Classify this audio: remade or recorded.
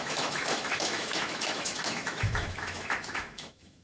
remade